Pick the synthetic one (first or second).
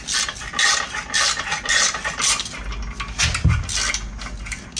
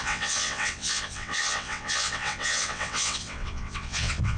second